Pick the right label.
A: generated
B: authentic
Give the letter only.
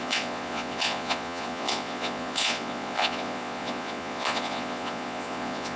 A